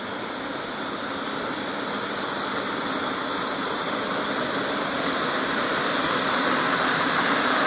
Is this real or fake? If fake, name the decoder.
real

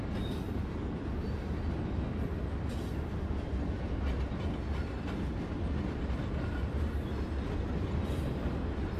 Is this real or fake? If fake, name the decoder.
real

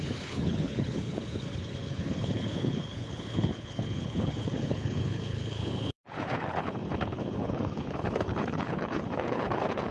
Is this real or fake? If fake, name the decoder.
fake, codec, HILCodec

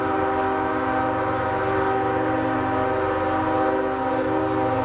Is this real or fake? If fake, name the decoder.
real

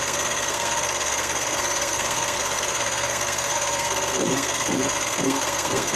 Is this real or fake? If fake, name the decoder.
fake, codec, SNAC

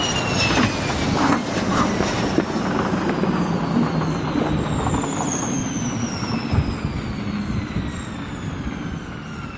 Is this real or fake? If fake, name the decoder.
real